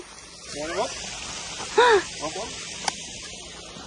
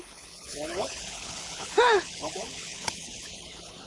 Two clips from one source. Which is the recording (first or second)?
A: first